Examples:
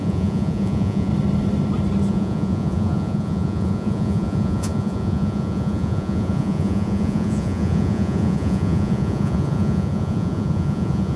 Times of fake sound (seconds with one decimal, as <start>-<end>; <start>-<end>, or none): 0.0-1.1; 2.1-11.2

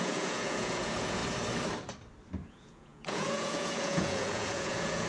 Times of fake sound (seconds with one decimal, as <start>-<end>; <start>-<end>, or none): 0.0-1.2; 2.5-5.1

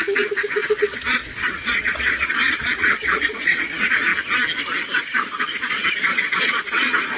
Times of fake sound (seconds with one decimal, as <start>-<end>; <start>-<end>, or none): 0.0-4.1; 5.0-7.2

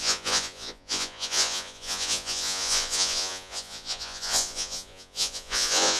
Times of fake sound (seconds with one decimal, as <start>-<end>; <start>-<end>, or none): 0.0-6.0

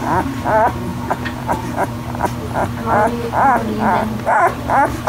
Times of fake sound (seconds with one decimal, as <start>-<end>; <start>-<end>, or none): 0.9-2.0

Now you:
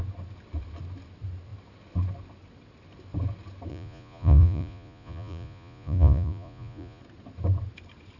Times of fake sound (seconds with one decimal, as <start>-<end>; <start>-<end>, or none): 3.7-7.0

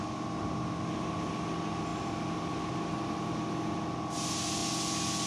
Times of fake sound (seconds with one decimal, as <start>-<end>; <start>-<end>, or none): none